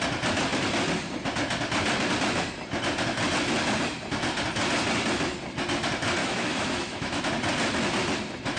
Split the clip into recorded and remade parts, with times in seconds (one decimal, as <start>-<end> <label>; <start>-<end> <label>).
0.0-6.2 recorded; 6.2-7.2 remade; 7.2-8.6 recorded